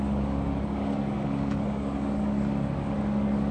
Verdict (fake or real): fake